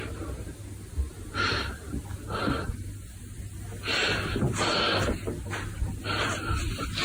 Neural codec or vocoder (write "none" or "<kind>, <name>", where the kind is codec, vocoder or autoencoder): none